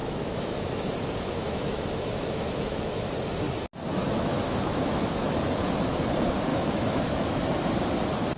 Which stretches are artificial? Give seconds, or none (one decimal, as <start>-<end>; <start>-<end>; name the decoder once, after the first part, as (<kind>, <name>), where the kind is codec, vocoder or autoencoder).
0.0-2.9 (autoencoder, DAC-VAE); 4.0-5.5; 6.5-7.7